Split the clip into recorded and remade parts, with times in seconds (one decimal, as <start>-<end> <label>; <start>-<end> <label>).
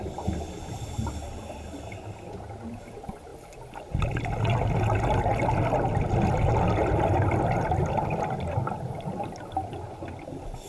0.0-10.7 recorded